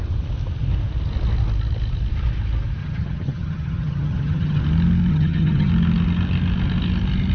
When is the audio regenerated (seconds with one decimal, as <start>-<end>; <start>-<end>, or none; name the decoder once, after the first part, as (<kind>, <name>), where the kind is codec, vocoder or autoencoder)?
2.8-4.6 (vocoder, HiFi-GAN); 5.1-5.7